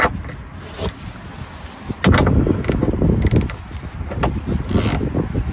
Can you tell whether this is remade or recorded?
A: recorded